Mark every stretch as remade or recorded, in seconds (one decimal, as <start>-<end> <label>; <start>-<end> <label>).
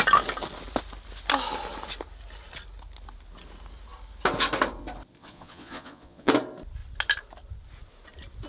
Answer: 0.0-5.2 recorded; 5.2-6.3 remade; 6.3-8.5 recorded